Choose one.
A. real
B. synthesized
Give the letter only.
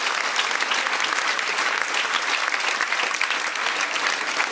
A